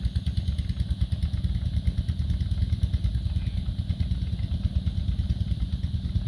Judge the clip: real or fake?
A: real